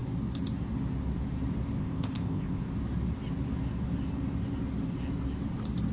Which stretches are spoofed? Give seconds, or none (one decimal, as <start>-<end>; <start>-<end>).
1.8-2.6